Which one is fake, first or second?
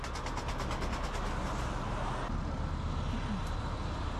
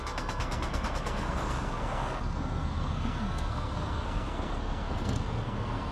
second